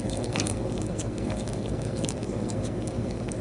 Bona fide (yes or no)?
no